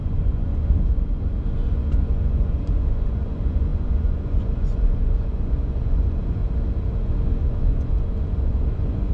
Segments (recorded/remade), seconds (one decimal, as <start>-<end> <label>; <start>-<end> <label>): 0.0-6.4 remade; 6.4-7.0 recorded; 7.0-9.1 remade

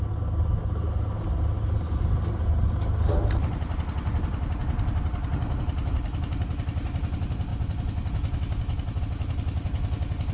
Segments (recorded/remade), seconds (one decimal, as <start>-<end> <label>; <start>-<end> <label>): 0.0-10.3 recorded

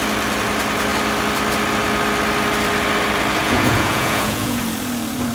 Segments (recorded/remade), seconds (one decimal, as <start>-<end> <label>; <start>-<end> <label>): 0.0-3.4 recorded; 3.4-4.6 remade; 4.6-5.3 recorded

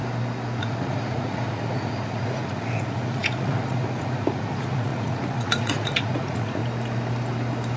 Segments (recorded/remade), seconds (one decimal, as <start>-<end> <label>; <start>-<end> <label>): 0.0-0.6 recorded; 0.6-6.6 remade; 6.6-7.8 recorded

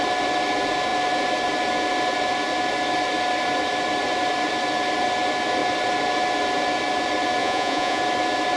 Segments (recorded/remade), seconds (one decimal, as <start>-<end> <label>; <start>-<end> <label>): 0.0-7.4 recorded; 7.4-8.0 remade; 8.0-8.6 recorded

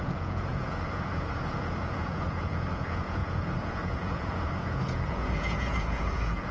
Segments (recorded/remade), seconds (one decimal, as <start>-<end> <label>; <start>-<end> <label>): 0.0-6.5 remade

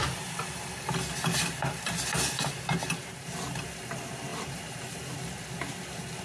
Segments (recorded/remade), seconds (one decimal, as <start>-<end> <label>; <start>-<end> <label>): 0.0-6.2 recorded

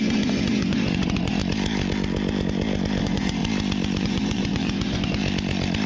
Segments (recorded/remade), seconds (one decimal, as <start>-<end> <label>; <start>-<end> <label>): 0.0-1.4 remade; 1.4-3.0 recorded; 3.0-3.4 remade; 3.4-4.0 recorded; 4.0-5.2 remade; 5.2-5.9 recorded